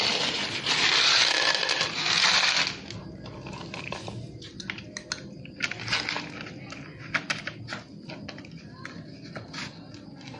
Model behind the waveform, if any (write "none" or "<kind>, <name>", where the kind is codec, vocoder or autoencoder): none